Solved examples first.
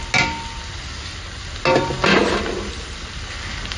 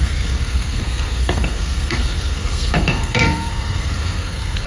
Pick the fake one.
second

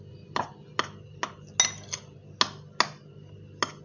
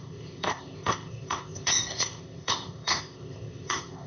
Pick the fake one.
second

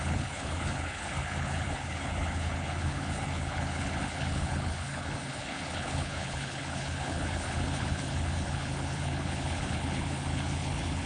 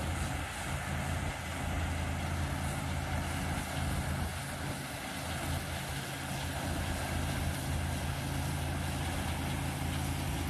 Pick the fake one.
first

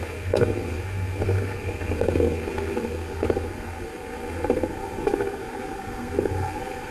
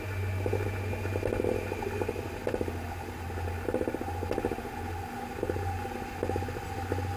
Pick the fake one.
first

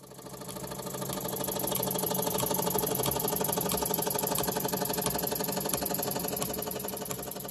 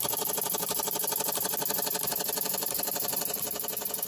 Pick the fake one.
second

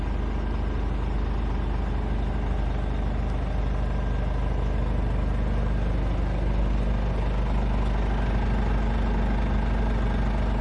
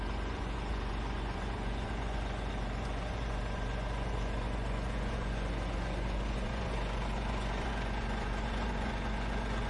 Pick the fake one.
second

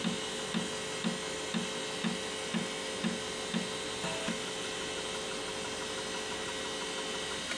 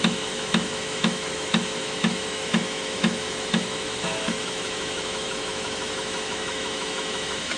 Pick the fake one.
second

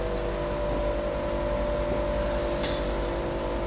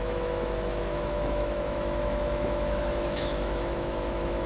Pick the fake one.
second